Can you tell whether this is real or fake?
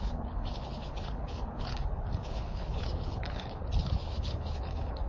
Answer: fake